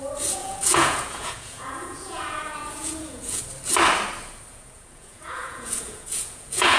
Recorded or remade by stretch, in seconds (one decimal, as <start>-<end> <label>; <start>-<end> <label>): 0.0-0.4 recorded; 0.4-3.4 remade; 3.4-4.5 recorded; 4.5-6.8 remade